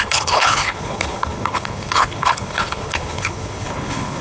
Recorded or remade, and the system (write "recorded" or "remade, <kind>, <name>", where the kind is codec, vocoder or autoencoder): remade, codec, HILCodec